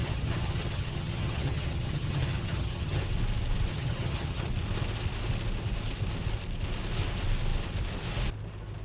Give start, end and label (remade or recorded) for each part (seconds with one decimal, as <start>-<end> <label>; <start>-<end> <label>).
0.0-3.0 remade; 3.0-3.7 recorded; 3.7-4.5 remade; 4.5-8.8 recorded